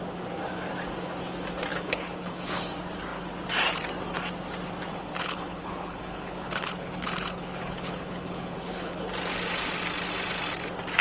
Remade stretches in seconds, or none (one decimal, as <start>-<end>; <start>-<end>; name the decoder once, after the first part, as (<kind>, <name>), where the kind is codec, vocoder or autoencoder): 1.7-2.6 (codec, HILCodec); 4.9-9.1